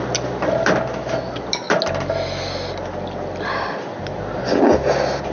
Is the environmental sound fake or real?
real